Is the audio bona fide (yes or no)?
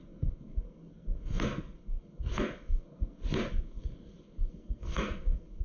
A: no